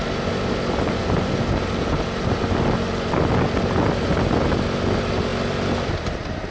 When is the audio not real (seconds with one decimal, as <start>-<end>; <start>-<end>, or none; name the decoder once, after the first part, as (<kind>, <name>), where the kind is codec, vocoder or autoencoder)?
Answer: none